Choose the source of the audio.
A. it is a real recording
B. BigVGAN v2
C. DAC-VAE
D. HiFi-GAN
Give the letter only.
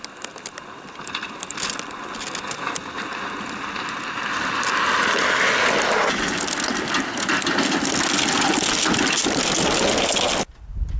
A